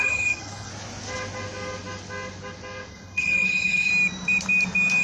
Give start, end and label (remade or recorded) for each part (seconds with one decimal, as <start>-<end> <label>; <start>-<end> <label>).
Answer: 0.0-0.7 remade; 0.7-2.9 recorded; 2.9-3.9 remade; 3.9-5.0 recorded